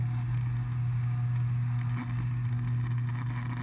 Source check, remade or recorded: recorded